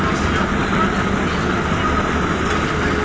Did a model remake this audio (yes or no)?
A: no